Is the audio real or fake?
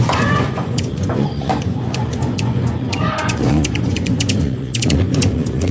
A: fake